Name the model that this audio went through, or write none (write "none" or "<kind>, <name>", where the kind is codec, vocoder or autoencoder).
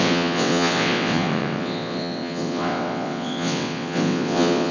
vocoder, WaveNeXt